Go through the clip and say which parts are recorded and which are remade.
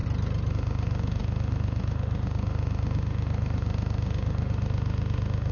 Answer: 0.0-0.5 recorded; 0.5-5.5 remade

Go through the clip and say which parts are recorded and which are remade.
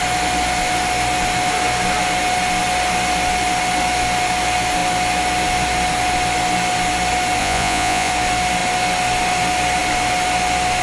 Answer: 0.0-7.4 recorded; 7.4-8.1 remade; 8.1-10.8 recorded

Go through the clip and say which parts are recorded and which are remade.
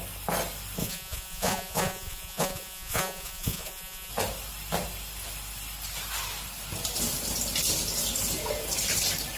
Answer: 0.0-0.8 recorded; 0.8-4.1 remade; 4.1-9.4 recorded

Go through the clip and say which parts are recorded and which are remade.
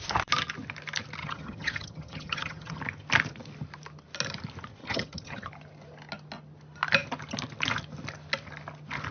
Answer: 0.0-1.2 recorded; 1.2-2.8 remade; 2.8-4.8 recorded; 4.8-5.5 remade; 5.5-9.1 recorded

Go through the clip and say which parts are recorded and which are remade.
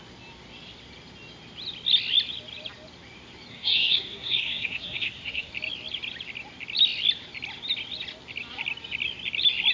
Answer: 0.0-3.5 recorded; 3.5-5.5 remade; 5.5-9.7 recorded